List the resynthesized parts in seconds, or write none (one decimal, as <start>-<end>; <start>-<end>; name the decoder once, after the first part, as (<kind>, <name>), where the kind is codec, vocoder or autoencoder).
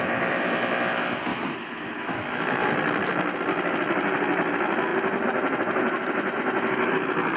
1.3-2.7 (autoencoder, DAC-VAE)